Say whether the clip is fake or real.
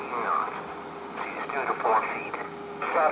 real